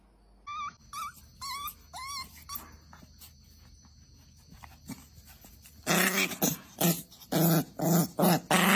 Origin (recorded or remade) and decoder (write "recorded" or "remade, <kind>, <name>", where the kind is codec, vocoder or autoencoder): recorded